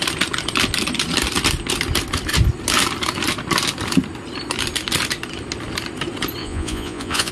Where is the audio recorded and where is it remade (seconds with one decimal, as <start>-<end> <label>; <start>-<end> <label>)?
0.0-6.4 recorded; 6.4-7.3 remade